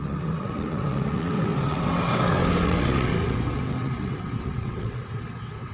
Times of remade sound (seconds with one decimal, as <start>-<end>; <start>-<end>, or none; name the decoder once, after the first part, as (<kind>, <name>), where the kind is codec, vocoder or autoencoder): 0.0-5.7 (vocoder, WaveNeXt)